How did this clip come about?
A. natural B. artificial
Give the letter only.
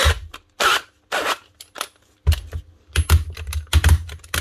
A